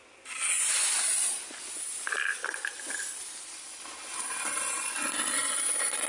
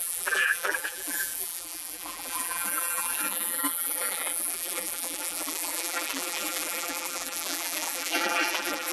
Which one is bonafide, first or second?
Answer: first